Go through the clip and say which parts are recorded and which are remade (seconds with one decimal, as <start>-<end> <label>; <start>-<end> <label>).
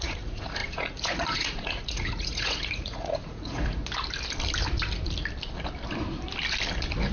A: 0.0-3.8 remade; 3.8-7.1 recorded